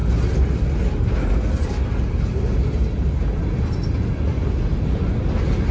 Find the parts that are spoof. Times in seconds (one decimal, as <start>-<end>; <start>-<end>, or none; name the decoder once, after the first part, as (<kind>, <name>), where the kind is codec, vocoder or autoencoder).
none